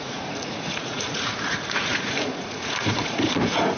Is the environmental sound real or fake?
fake